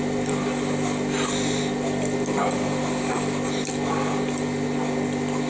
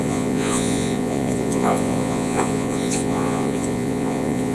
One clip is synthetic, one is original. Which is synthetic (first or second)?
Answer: second